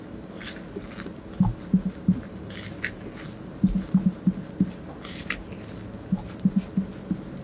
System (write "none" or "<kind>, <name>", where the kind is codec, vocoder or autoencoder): none